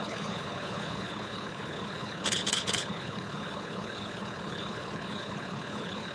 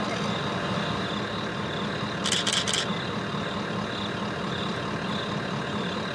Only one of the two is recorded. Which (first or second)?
second